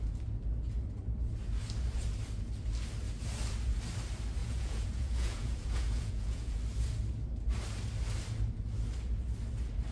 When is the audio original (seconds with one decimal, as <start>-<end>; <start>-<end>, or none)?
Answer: 0.0-4.4; 6.6-9.9